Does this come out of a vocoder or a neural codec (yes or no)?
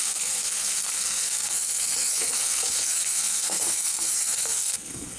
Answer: yes